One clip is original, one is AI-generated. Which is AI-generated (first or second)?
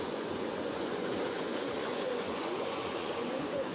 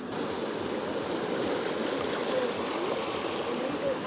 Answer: first